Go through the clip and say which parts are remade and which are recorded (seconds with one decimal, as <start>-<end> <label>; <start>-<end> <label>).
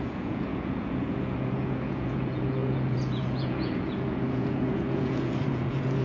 0.0-6.0 remade